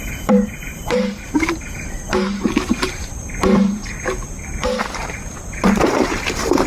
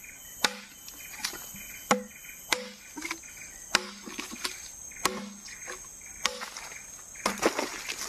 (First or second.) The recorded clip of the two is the second